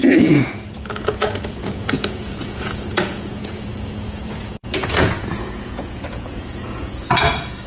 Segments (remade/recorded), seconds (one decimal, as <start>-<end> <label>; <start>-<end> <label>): 0.0-7.7 remade

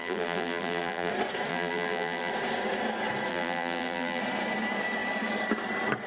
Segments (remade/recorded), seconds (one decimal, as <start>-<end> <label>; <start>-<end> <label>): 0.0-1.1 remade; 1.1-1.5 recorded; 1.5-2.3 remade; 2.3-3.3 recorded; 3.3-4.2 remade; 4.2-6.1 recorded